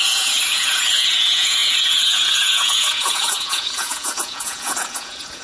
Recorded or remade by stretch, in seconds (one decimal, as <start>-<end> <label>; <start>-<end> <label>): 0.0-5.4 remade